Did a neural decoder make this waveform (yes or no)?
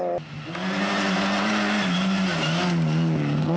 no